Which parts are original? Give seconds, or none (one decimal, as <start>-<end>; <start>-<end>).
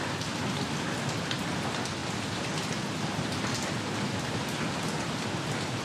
0.0-5.8